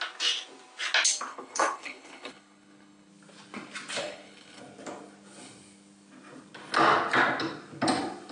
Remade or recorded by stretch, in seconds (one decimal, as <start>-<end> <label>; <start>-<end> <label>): 0.0-1.3 recorded; 1.3-3.1 remade; 3.1-4.0 recorded; 4.0-4.6 remade; 4.6-8.3 recorded